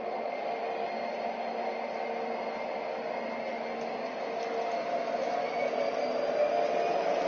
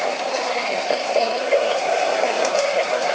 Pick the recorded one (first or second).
first